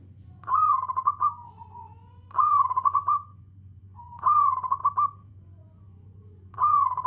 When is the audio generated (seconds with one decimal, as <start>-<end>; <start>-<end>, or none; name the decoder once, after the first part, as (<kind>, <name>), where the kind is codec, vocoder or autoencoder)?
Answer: 0.0-4.8 (vocoder, Vocos); 5.3-7.1